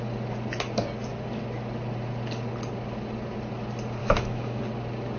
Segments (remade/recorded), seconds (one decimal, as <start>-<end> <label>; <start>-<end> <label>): 0.0-4.0 recorded; 4.0-4.6 remade; 4.6-5.2 recorded

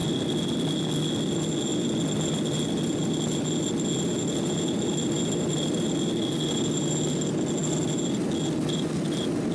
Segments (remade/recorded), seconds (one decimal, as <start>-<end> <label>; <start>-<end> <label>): 0.0-9.5 recorded

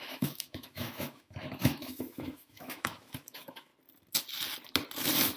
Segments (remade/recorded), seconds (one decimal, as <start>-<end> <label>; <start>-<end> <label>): 0.0-3.7 remade; 3.7-5.4 recorded